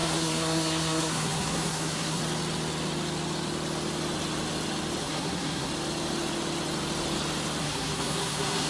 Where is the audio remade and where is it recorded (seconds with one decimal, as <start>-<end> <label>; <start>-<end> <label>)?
0.0-2.2 remade; 2.2-5.0 recorded; 5.0-5.7 remade; 5.7-7.6 recorded; 7.6-8.7 remade

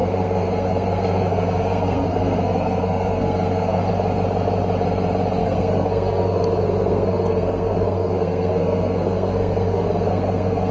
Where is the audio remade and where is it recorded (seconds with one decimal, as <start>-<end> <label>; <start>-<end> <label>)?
0.0-3.9 remade; 3.9-5.4 recorded; 5.4-10.7 remade

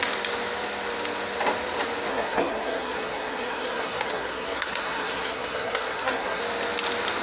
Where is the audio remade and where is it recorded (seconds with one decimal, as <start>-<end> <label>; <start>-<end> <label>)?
0.0-2.1 recorded; 2.1-6.4 remade; 6.4-7.2 recorded